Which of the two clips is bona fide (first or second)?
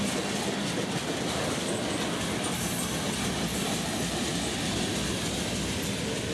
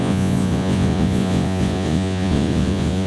first